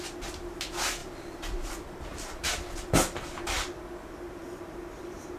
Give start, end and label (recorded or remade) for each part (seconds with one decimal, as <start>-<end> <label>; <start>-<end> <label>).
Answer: 0.0-1.0 recorded; 1.0-3.8 remade; 3.8-4.4 recorded; 4.4-5.4 remade